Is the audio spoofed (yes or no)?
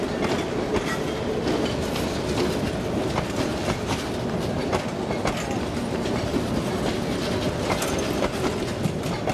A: no